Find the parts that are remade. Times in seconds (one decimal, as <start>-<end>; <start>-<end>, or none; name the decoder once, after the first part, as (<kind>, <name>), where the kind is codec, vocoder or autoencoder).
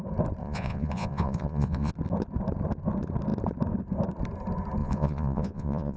0.4-1.9 (vocoder, Vocos); 4.8-6.0